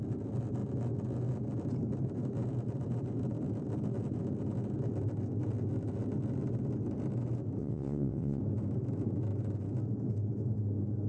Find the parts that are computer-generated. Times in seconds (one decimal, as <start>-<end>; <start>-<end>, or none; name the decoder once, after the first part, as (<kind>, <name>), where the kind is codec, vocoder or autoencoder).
7.6-8.4 (vocoder, WaveNeXt)